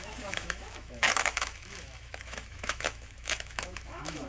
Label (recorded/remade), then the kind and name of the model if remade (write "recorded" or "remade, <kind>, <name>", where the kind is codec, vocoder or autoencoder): remade, autoencoder, DAC-VAE